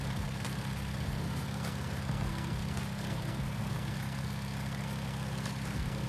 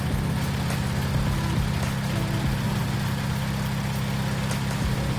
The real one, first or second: second